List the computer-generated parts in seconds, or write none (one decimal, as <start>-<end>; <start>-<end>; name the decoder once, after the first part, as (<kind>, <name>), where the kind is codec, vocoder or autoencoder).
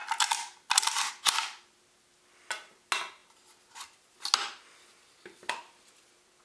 none